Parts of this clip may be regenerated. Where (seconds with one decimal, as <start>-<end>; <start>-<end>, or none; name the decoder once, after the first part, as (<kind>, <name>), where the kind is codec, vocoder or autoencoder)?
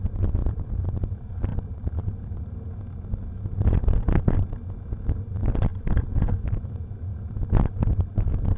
0.4-1.0 (vocoder, BigVGAN v2); 1.5-2.7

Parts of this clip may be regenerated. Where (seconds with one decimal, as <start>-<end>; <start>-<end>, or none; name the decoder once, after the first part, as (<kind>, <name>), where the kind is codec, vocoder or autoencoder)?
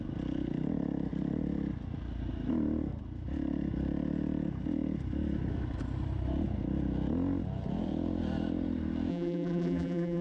9.1-10.2 (vocoder, BigVGAN v2)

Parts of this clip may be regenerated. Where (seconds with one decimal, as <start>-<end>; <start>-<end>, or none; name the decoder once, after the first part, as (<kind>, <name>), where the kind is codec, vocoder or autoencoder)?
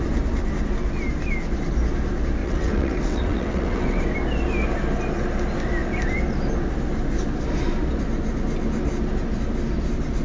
2.4-4.0 (vocoder, WaveNeXt)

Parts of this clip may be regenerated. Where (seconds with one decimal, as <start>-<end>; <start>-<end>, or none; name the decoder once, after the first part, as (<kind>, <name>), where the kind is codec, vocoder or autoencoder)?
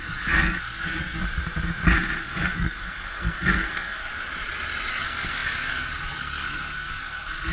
0.0-1.2 (codec, SNAC); 2.2-4.1; 4.9-7.5